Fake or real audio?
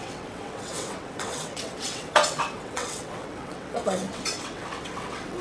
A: fake